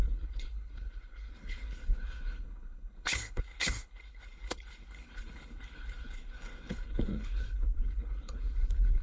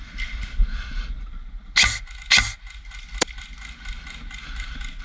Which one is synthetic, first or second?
first